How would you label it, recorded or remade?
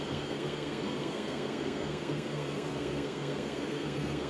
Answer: remade